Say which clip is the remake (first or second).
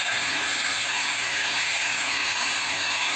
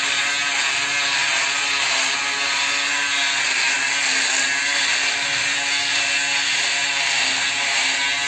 first